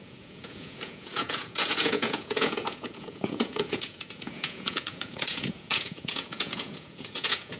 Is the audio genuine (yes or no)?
no